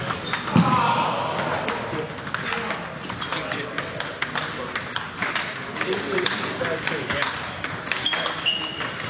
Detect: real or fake real